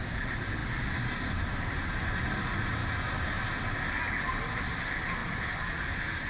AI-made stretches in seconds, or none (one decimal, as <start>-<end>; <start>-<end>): none